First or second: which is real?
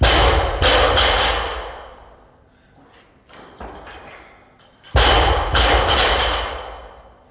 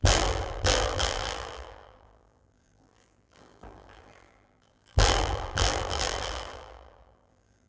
first